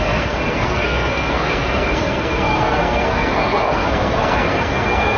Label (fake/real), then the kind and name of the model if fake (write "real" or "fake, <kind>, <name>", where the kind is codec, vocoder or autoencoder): fake, codec, SNAC